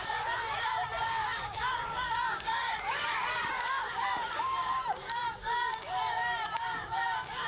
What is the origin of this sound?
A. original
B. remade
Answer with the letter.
B